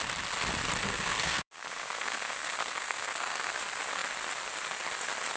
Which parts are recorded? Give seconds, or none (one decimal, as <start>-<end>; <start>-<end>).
0.0-0.8; 3.6-5.4

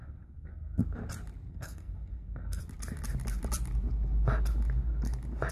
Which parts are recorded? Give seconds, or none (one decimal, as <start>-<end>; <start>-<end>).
0.8-1.5; 2.6-5.5

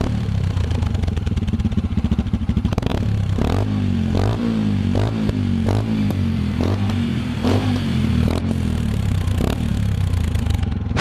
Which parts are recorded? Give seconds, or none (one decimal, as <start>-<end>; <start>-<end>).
none

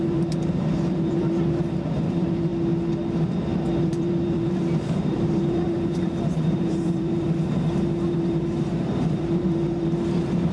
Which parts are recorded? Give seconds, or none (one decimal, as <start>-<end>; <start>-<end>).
2.5-3.8

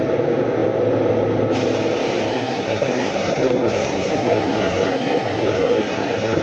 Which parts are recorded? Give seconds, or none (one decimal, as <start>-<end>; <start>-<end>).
0.0-2.3

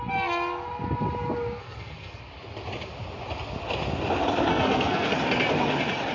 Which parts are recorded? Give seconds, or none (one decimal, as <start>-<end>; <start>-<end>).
0.0-1.6; 2.2-4.5; 5.1-6.1

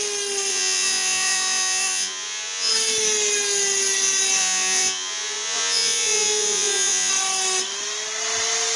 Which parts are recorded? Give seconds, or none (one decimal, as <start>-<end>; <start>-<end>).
0.0-0.5; 2.7-4.4; 7.1-8.8